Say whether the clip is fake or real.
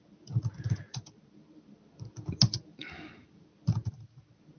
real